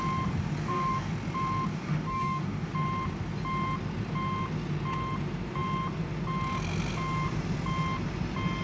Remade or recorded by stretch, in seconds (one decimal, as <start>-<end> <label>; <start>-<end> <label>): 0.0-0.6 recorded; 0.6-1.1 remade; 1.1-1.7 recorded; 1.7-2.7 remade; 2.7-8.6 recorded